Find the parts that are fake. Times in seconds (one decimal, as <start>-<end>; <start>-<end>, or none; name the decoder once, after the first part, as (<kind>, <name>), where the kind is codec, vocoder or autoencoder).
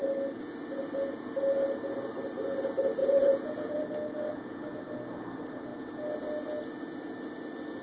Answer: 3.0-3.8 (vocoder, Vocos)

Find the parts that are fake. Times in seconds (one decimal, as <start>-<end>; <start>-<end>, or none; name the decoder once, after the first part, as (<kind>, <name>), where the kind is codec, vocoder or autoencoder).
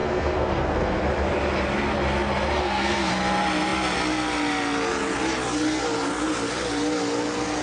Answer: 0.0-1.0 (codec, SNAC); 2.6-3.1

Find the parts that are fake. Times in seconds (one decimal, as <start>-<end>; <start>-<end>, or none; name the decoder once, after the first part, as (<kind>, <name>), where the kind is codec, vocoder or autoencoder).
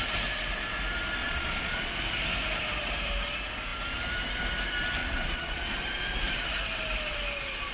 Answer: 1.2-1.9 (vocoder, Vocos); 5.0-5.8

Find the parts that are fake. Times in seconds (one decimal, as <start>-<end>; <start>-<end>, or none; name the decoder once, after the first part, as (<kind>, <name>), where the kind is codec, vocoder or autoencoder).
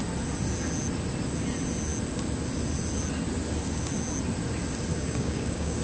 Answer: 4.9-5.8 (codec, DAC)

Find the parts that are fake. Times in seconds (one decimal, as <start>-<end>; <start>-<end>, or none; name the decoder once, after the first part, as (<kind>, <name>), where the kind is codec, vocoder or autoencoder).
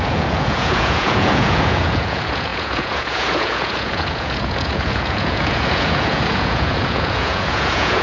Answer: 0.0-8.0 (vocoder, Vocos)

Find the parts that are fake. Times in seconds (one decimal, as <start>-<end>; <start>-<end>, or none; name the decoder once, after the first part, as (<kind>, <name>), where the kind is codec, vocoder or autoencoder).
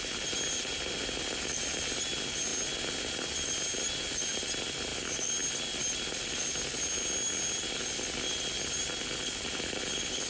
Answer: none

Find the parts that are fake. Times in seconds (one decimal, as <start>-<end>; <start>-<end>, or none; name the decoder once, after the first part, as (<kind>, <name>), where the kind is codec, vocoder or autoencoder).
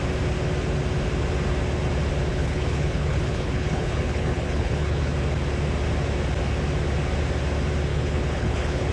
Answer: 2.3-5.1 (codec, HILCodec); 7.9-8.9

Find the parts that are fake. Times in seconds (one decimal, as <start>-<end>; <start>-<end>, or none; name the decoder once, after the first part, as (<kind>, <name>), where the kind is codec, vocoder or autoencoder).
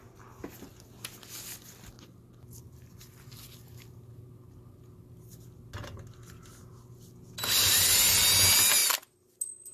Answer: none